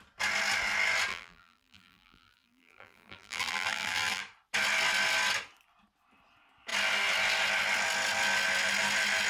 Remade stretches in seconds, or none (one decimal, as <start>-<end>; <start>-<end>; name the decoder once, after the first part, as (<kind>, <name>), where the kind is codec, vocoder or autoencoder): 1.1-4.2 (vocoder, BigVGAN v2)

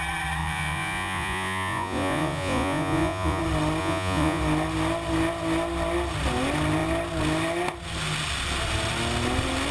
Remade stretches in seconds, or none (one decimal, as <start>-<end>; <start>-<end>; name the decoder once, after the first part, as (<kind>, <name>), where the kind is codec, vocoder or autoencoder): 0.4-3.4 (vocoder, Vocos); 3.8-4.4